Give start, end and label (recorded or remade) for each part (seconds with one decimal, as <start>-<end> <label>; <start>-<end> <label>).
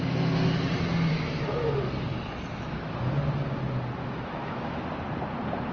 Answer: 0.0-1.1 recorded; 1.1-1.7 remade; 1.7-2.1 recorded; 2.1-3.1 remade; 3.1-4.0 recorded; 4.0-4.8 remade; 4.8-5.7 recorded